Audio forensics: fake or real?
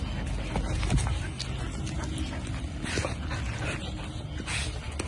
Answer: real